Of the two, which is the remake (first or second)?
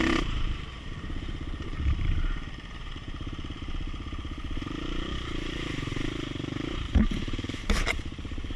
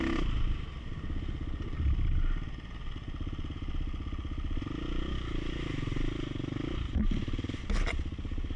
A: first